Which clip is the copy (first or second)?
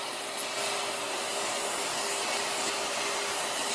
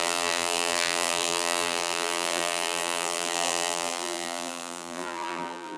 second